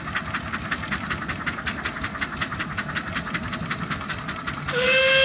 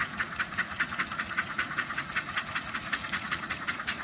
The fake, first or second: second